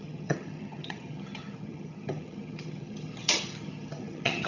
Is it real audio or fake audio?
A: fake